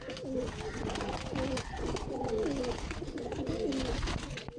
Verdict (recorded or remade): recorded